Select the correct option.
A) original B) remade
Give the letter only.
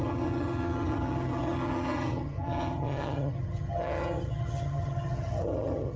B